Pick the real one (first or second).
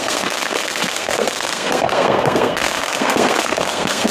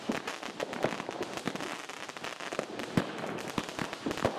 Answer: second